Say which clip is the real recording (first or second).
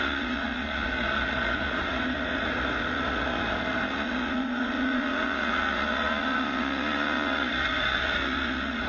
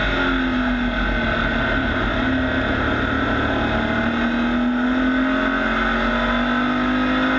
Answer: second